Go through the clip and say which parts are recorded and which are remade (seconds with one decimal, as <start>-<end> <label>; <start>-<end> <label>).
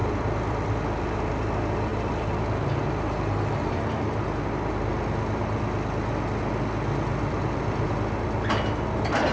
0.0-0.8 remade; 0.8-7.1 recorded; 7.1-7.9 remade; 7.9-9.3 recorded